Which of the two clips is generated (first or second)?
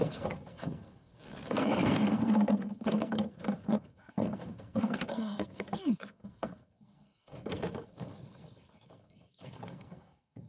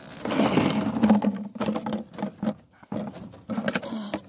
first